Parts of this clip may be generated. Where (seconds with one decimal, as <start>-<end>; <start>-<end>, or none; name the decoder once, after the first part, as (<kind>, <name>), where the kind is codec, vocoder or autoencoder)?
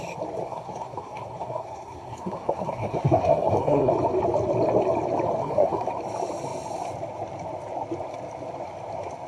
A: 0.4-3.9 (codec, SNAC); 5.4-5.9